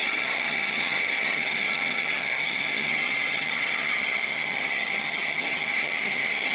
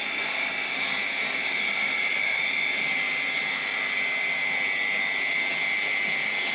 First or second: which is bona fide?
second